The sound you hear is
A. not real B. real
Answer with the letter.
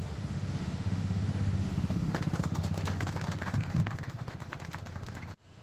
A